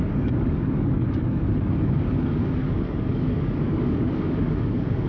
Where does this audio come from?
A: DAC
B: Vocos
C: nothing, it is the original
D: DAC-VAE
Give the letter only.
A